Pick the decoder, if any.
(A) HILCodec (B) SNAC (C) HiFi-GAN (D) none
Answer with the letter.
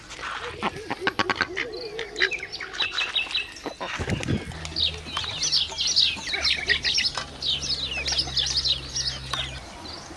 D